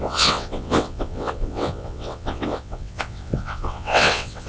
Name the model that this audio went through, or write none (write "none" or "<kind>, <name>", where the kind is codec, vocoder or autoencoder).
vocoder, WaveNeXt